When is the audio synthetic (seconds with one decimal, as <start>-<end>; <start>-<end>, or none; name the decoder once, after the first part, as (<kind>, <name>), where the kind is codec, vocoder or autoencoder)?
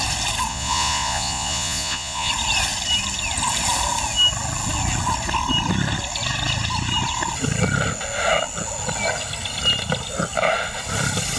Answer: 0.5-2.3 (vocoder, Vocos)